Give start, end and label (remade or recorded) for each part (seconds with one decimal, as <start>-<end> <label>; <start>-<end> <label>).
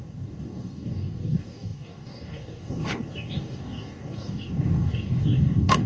0.0-5.9 remade